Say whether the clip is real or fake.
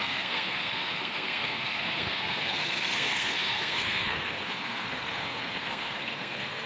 fake